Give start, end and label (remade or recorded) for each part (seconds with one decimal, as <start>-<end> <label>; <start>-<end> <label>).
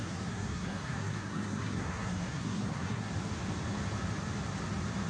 0.0-3.1 remade; 3.1-5.1 recorded